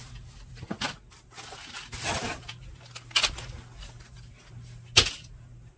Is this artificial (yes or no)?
no